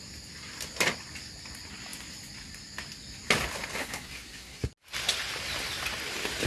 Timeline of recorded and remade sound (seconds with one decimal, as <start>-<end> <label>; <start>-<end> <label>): 0.0-3.8 recorded; 3.8-4.7 remade; 4.7-6.5 recorded